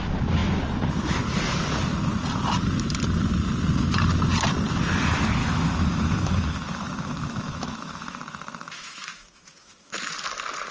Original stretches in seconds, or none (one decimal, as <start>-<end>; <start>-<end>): 0.0-5.4; 10.1-10.7